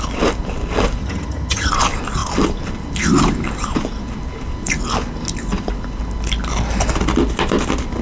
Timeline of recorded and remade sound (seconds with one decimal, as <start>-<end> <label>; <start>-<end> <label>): 0.0-1.0 recorded; 1.0-1.7 remade; 1.7-8.0 recorded